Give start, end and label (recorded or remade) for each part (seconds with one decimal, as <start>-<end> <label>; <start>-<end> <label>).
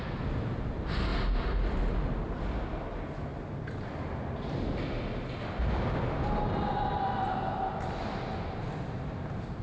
0.0-9.6 recorded